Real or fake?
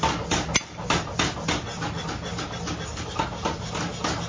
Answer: real